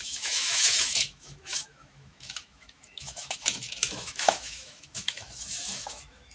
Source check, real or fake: fake